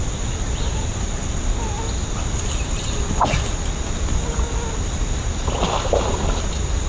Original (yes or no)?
yes